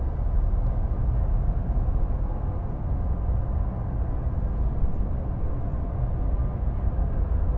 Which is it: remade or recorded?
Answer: recorded